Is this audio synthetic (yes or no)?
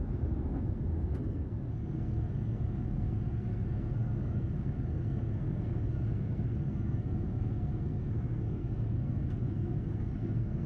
yes